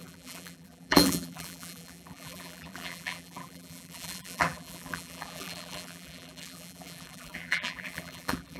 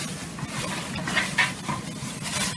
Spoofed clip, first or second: first